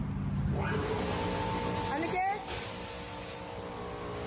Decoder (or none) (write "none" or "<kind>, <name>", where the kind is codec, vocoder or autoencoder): none